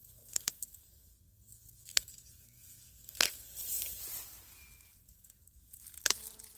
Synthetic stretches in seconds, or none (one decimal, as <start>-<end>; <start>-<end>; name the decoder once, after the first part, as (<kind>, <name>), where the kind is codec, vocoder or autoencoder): 0.0-4.0 (codec, SNAC); 5.0-5.8